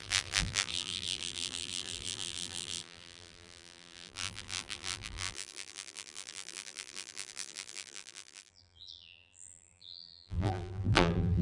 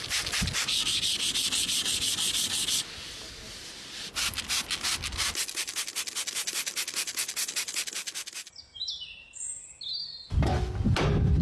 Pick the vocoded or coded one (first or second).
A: first